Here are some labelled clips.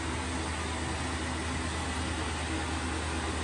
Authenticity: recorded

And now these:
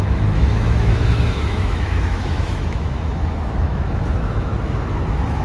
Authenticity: remade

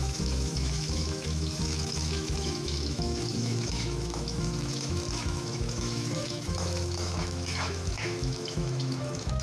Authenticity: remade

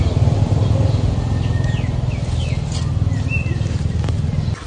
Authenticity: recorded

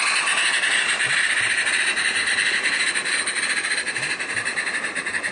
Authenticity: recorded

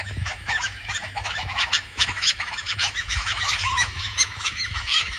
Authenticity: remade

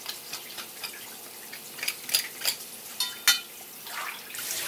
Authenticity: recorded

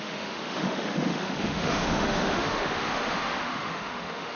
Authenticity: remade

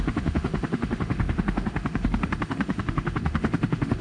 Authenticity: remade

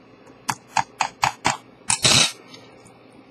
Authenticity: recorded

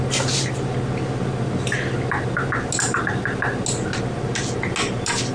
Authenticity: recorded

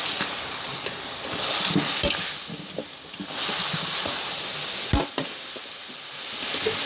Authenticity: recorded